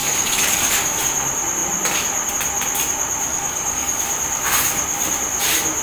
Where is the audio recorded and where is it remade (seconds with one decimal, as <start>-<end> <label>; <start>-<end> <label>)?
0.0-1.0 remade; 1.0-3.3 recorded; 3.3-4.0 remade; 4.0-5.8 recorded